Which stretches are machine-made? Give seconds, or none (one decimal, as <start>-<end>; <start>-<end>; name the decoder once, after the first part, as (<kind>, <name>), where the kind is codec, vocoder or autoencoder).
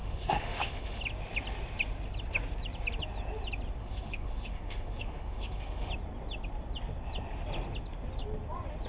0.0-1.0 (autoencoder, DAC-VAE); 3.8-5.9